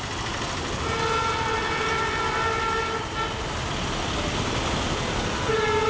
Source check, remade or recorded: recorded